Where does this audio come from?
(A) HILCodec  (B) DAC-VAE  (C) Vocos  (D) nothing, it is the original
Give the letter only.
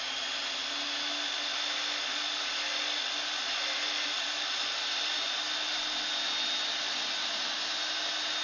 D